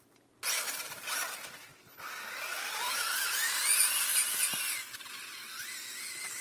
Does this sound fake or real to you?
real